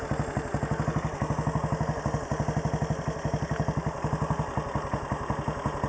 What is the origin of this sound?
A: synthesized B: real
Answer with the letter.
B